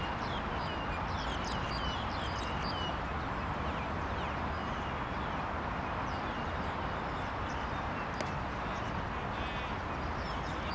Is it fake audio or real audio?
real